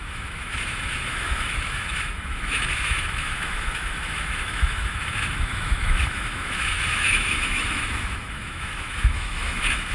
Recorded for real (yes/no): no